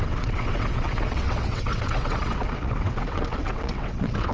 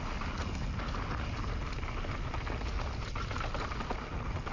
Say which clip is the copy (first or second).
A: first